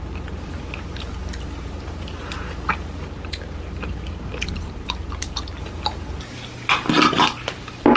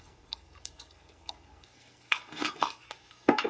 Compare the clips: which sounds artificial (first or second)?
second